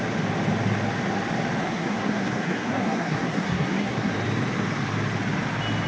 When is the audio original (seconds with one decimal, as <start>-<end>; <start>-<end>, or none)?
0.0-1.6; 4.1-5.9